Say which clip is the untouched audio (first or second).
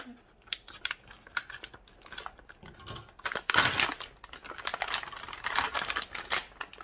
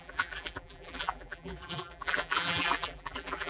first